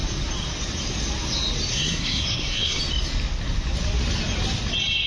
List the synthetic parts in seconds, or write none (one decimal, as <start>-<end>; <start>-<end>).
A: 1.7-2.8